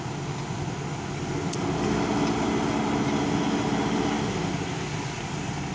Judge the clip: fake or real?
real